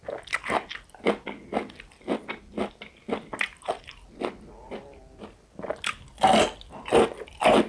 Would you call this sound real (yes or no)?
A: yes